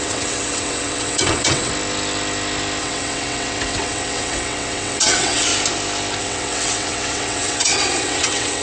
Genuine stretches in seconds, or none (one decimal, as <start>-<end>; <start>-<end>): 1.7-2.8; 5.5-6.2

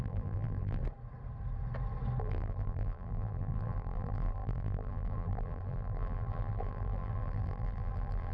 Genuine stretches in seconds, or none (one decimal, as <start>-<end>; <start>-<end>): 0.8-2.2

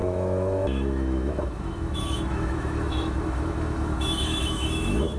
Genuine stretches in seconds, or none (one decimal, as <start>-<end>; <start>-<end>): none

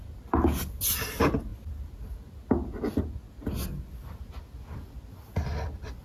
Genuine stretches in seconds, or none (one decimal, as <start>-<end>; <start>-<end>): 0.0-6.0

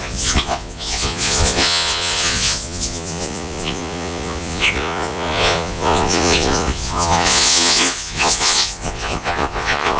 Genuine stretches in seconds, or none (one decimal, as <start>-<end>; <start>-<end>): none

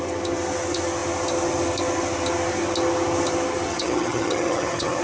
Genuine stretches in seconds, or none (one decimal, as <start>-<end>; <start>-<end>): 0.0-3.7